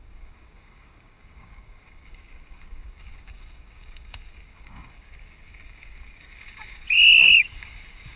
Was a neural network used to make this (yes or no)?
yes